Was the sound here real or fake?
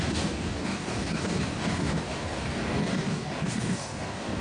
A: fake